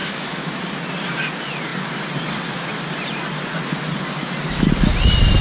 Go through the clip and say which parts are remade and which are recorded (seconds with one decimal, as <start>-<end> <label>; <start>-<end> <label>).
0.0-0.6 remade; 0.6-5.4 recorded